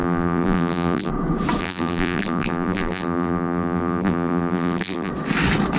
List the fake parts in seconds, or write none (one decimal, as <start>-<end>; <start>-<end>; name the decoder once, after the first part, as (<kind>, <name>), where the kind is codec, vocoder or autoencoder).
0.0-1.1 (vocoder, BigVGAN v2); 1.6-5.1